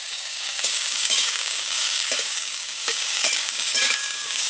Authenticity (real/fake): fake